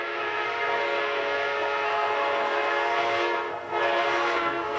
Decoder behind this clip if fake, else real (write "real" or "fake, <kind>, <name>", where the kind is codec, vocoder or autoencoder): fake, codec, SNAC